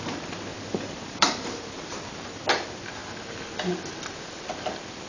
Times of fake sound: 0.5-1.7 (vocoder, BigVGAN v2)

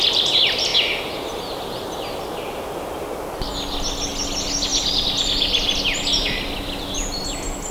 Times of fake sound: none